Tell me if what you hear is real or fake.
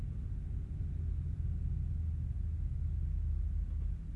real